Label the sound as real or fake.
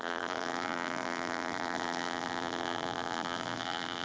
fake